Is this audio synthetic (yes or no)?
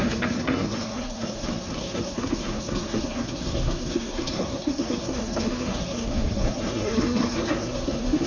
yes